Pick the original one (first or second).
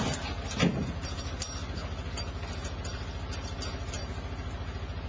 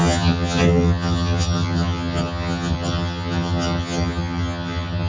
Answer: first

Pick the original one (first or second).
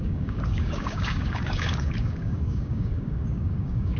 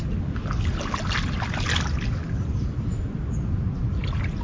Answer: second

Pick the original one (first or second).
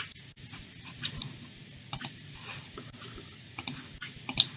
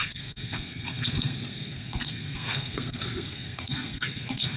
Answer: first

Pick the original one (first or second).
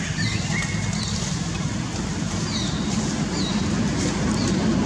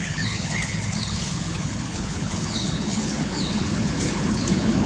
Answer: first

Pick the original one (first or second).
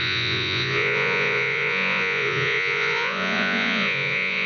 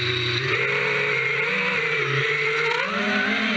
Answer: second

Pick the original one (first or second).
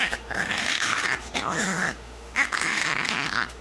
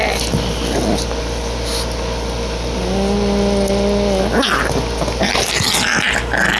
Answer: second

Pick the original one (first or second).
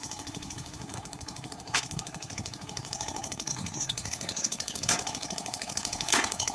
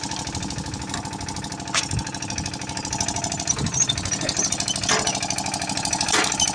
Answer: second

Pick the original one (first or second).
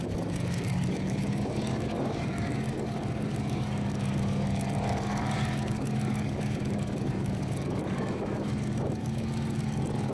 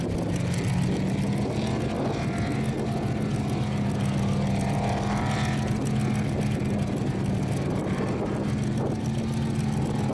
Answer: second